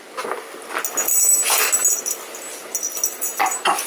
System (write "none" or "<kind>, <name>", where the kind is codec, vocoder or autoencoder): none